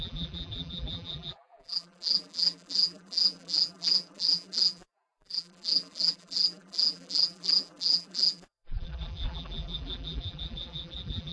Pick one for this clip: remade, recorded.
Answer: remade